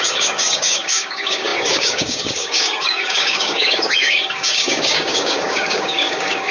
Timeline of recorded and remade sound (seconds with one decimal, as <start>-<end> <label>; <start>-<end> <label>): 0.0-6.5 remade